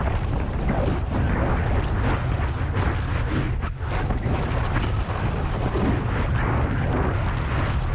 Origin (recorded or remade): recorded